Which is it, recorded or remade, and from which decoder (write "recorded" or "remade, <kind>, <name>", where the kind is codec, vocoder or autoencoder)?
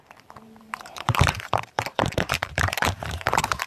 remade, vocoder, BigVGAN v2